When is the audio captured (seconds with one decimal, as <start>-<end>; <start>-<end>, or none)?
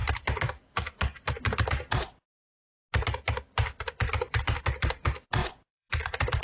0.0-5.4